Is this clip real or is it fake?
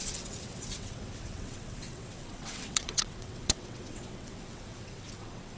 fake